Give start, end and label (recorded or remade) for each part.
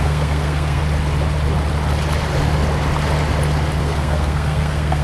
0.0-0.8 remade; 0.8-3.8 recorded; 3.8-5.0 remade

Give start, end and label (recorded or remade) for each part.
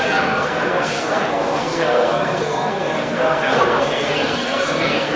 0.0-5.2 remade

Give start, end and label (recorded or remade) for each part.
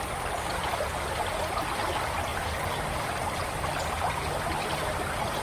0.0-5.4 recorded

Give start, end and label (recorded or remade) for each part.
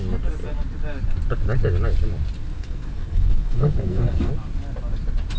0.0-2.5 recorded; 2.5-4.3 remade; 4.3-5.4 recorded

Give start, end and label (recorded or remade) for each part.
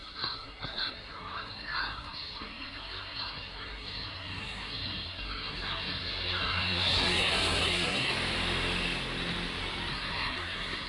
0.0-8.1 remade; 8.1-9.9 recorded; 9.9-10.9 remade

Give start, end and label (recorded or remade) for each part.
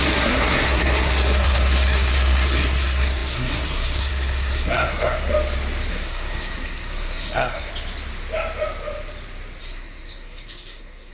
0.0-5.3 remade; 5.3-5.9 recorded; 5.9-7.7 remade; 7.7-9.6 recorded; 9.6-11.1 remade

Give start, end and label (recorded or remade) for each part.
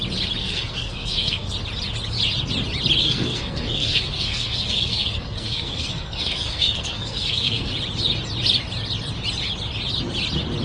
0.0-0.4 recorded; 0.4-1.5 remade; 1.5-3.0 recorded; 3.0-7.7 remade; 7.7-10.6 recorded